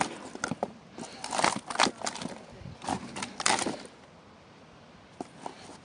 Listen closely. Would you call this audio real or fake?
real